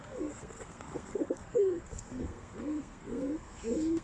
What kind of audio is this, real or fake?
fake